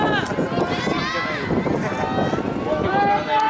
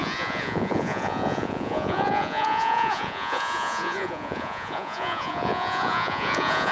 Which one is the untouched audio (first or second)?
first